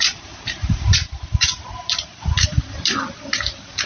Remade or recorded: remade